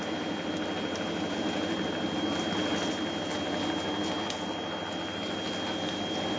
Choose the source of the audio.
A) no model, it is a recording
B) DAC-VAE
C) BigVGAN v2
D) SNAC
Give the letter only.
A